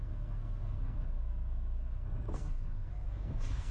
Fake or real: fake